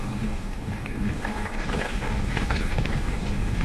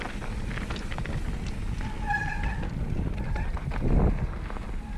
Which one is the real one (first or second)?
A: second